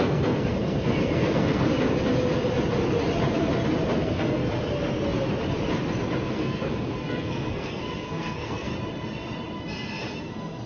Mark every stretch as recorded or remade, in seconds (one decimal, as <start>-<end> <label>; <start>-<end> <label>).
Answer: 0.0-1.7 remade; 1.7-4.0 recorded; 4.0-4.4 remade; 4.4-6.3 recorded; 6.3-8.7 remade; 8.7-10.2 recorded; 10.2-10.7 remade